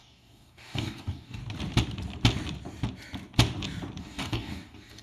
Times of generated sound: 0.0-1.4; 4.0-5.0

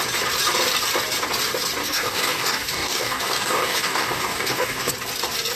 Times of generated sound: 1.8-4.9

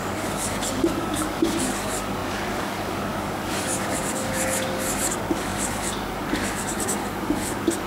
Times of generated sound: 0.0-7.9

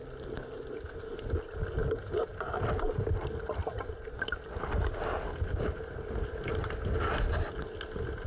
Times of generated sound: none